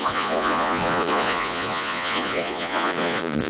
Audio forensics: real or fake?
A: fake